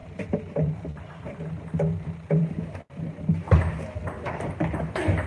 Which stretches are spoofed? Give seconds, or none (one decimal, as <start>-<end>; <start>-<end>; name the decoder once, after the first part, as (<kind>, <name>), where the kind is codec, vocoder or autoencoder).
0.0-3.2 (vocoder, BigVGAN v2)